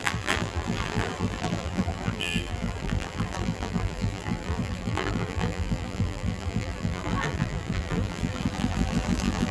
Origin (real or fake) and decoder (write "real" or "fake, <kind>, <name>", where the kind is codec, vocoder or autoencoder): fake, vocoder, BigVGAN v2